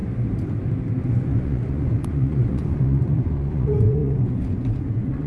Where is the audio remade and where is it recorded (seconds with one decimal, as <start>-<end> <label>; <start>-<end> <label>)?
0.0-1.1 recorded; 1.1-5.3 remade